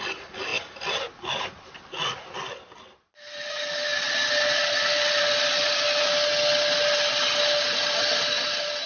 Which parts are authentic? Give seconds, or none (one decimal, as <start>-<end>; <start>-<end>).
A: 0.0-8.9